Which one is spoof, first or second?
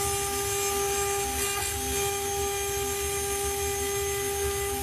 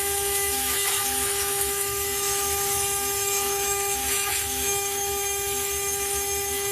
second